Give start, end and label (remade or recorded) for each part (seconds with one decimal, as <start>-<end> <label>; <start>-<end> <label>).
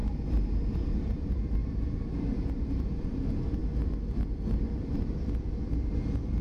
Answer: 0.0-0.7 recorded; 0.7-3.6 remade; 3.6-4.8 recorded; 4.8-6.4 remade